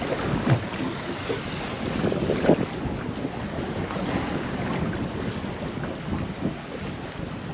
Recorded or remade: recorded